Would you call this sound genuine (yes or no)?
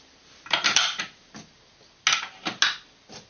yes